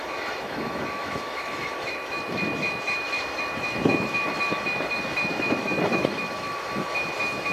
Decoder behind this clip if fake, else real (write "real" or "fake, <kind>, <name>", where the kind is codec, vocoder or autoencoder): fake, autoencoder, DAC-VAE